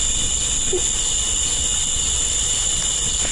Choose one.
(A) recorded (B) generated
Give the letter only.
A